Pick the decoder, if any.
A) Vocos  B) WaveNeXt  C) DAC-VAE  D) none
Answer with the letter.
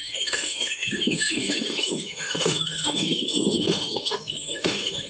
C